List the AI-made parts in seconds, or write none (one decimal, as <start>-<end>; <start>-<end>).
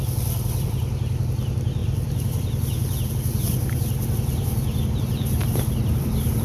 1.8-3.1; 4.3-5.0